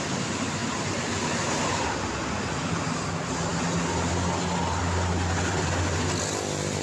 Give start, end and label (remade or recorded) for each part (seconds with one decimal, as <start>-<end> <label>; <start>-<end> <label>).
0.0-0.6 recorded; 0.6-2.1 remade; 2.1-6.8 recorded